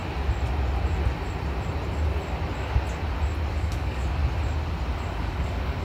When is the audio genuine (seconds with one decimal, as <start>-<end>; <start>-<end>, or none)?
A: 0.0-3.5; 4.2-5.1